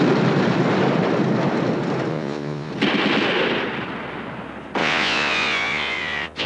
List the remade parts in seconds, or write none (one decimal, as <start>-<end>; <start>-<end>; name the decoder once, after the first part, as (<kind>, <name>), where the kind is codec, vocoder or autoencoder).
2.1-2.7 (vocoder, Vocos); 4.8-6.5